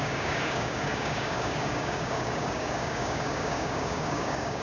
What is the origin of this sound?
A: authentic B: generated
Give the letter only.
B